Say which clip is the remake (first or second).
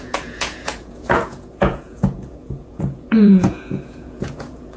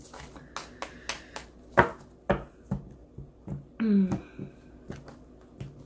first